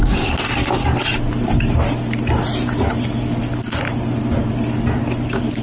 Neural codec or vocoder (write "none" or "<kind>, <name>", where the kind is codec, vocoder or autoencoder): none